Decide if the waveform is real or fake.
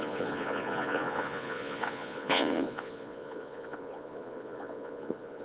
fake